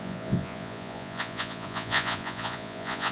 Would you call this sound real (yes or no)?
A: no